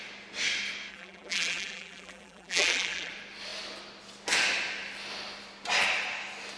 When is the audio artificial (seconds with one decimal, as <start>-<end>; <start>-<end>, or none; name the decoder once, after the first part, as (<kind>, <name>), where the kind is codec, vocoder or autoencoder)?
0.9-3.1 (vocoder, BigVGAN v2)